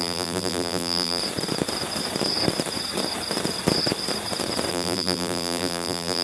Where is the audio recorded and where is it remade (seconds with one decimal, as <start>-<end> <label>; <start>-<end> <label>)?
0.0-1.2 remade; 1.2-4.7 recorded; 4.7-6.2 remade